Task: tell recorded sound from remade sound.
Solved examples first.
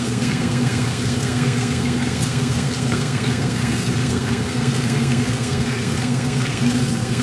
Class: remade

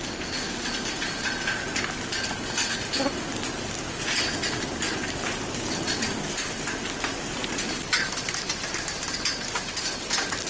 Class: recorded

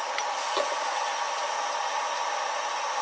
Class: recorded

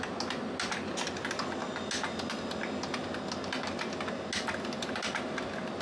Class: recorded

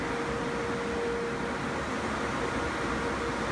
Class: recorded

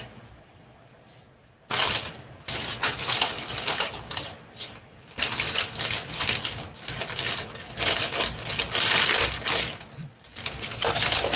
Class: recorded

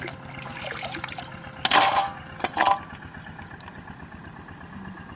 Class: recorded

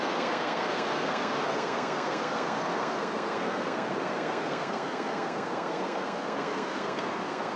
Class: remade